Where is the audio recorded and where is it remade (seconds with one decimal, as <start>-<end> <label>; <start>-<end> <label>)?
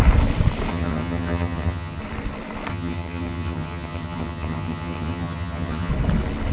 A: 0.0-0.7 recorded; 0.7-2.0 remade; 2.0-2.7 recorded; 2.7-5.9 remade; 5.9-6.5 recorded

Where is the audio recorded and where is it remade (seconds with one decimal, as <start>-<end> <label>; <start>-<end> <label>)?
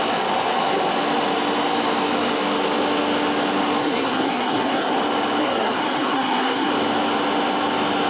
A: 0.0-3.8 recorded; 3.8-5.0 remade; 5.0-5.4 recorded; 5.4-6.7 remade; 6.7-8.1 recorded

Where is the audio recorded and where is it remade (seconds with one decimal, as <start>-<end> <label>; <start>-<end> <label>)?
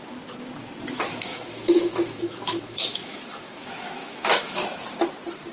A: 0.0-1.3 recorded; 1.3-4.6 remade; 4.6-5.5 recorded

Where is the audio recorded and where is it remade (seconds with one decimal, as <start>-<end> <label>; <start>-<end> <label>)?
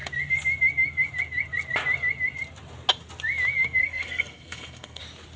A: 0.0-3.8 recorded; 3.8-5.0 remade; 5.0-5.4 recorded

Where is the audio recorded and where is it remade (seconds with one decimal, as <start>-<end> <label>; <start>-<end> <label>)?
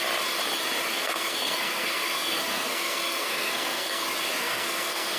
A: 0.0-0.9 recorded; 0.9-4.0 remade; 4.0-4.4 recorded; 4.4-5.2 remade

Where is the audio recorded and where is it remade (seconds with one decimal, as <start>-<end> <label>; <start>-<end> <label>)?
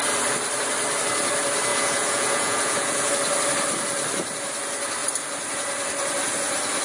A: 0.0-1.7 recorded; 1.7-3.1 remade; 3.1-6.8 recorded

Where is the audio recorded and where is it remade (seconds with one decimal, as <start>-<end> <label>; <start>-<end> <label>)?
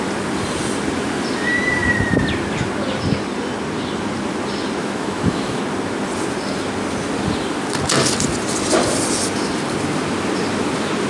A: 0.0-4.8 recorded; 4.8-5.6 remade; 5.6-11.1 recorded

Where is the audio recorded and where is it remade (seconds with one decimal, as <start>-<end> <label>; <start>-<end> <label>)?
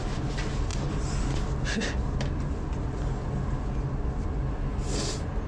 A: 0.0-5.5 recorded